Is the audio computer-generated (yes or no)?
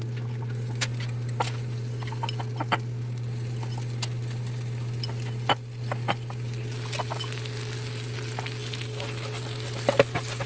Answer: no